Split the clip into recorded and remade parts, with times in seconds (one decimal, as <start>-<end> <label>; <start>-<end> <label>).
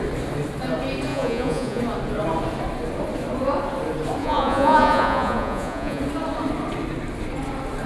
0.0-1.1 recorded; 1.1-1.8 remade; 1.8-4.2 recorded; 4.2-6.0 remade; 6.0-7.9 recorded